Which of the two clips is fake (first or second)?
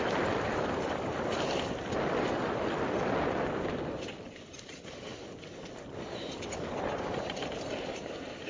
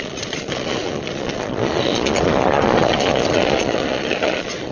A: second